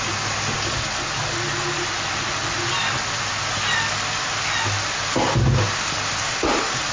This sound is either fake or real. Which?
real